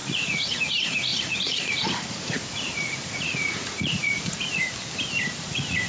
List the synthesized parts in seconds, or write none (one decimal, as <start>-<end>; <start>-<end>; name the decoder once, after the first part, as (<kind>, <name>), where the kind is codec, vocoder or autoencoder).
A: 0.0-0.6 (vocoder, Vocos); 1.1-4.6; 5.2-5.9